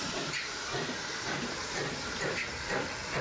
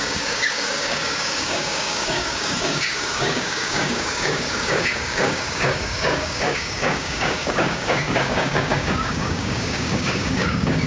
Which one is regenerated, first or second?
second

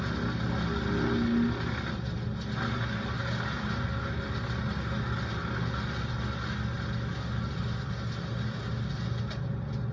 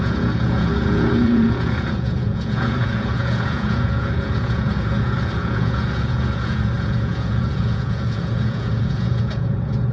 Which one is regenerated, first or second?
second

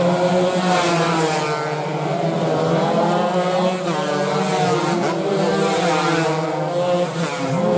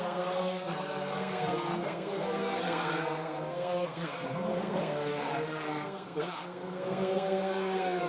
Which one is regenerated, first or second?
second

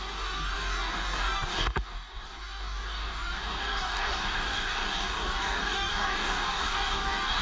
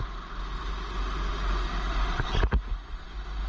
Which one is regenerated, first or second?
first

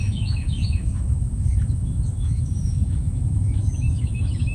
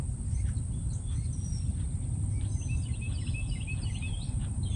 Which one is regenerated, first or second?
first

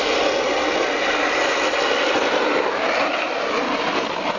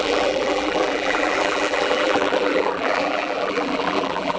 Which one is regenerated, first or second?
second